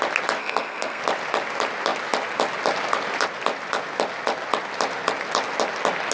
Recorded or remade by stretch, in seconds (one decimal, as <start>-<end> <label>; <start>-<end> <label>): 0.0-0.4 recorded; 0.4-1.0 remade; 1.0-6.1 recorded